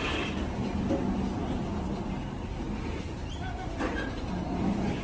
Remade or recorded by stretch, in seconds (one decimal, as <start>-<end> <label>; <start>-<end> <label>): 0.0-5.0 recorded